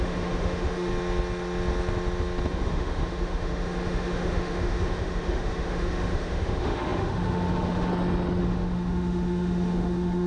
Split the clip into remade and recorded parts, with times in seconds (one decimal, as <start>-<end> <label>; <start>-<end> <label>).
0.0-0.9 remade; 0.9-2.5 recorded; 2.5-7.9 remade; 7.9-8.4 recorded; 8.4-10.3 remade